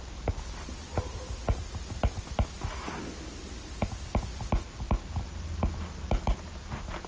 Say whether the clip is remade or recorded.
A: recorded